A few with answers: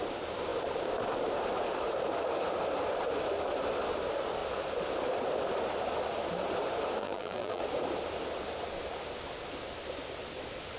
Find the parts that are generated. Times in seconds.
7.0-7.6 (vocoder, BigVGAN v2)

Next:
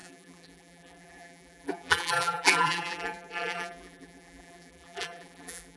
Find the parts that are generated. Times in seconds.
0.0-5.8 (vocoder, BigVGAN v2)